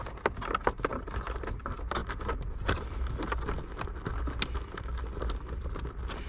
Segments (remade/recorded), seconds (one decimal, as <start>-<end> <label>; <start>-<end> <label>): 0.0-6.3 recorded